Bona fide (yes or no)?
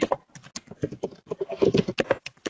yes